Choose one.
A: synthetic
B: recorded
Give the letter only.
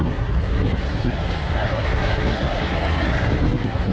A